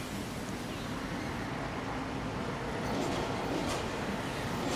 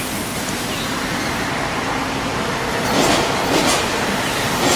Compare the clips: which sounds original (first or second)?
first